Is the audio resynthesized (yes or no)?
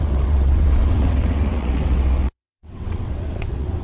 yes